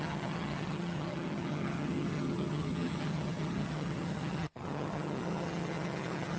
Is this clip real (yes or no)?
no